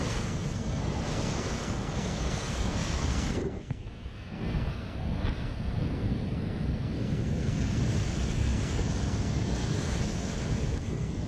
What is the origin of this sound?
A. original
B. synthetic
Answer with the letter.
B